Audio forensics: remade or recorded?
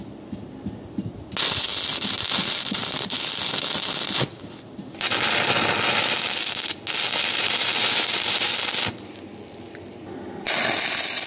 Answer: recorded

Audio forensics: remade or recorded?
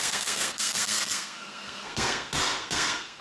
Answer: remade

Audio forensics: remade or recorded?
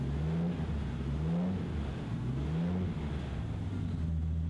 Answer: recorded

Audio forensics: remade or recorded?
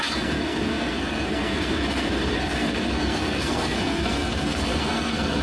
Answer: remade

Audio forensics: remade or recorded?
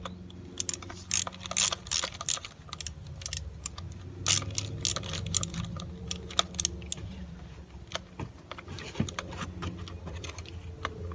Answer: recorded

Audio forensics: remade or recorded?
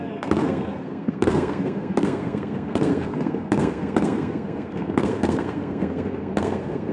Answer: remade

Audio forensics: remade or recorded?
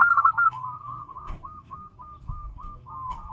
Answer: remade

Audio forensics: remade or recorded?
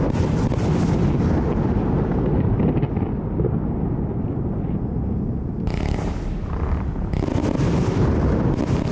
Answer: recorded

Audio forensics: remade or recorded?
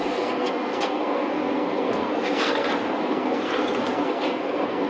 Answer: remade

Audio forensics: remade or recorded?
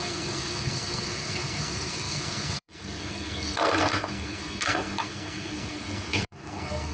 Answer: remade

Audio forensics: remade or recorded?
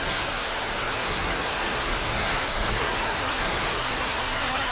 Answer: remade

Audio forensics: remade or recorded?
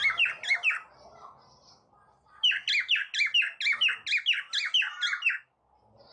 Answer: recorded